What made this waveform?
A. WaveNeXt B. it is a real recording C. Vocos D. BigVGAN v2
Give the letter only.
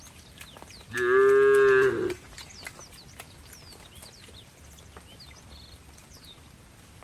B